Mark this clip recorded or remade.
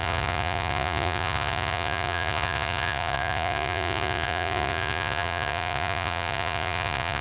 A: remade